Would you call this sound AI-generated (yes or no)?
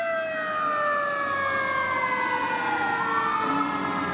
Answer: no